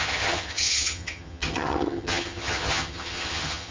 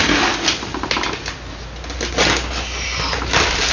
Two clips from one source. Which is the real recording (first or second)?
second